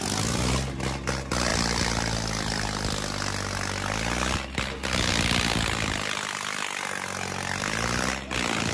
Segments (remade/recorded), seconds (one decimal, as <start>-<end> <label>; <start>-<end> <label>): 0.0-8.7 recorded

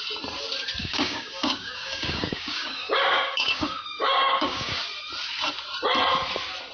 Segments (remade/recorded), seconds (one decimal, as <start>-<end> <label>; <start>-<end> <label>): 0.0-0.8 recorded; 0.8-4.8 remade; 4.8-6.7 recorded

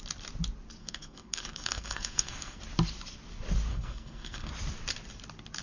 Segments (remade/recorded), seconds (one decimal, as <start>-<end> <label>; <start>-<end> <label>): 0.0-0.8 recorded; 0.8-2.6 remade; 2.6-3.7 recorded; 3.7-4.5 remade; 4.5-5.6 recorded

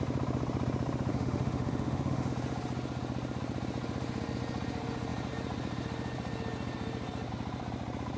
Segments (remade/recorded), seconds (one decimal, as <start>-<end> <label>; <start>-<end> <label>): 0.0-1.1 recorded; 1.1-2.3 remade; 2.3-8.2 recorded